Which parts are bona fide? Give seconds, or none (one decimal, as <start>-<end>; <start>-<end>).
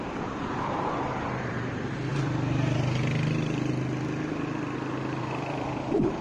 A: 2.1-5.2